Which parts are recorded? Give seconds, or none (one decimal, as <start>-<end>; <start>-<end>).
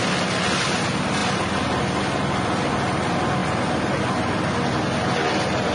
0.0-3.4; 4.0-5.7